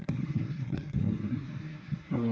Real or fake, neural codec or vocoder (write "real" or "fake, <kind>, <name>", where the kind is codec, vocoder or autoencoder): fake, codec, SNAC